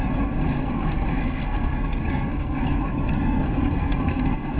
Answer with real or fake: fake